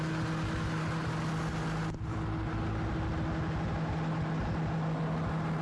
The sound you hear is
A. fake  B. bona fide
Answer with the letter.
B